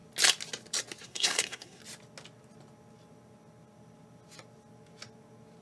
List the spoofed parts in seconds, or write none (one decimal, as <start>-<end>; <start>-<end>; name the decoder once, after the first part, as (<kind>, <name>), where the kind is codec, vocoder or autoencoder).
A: 1.0-1.8 (codec, SNAC)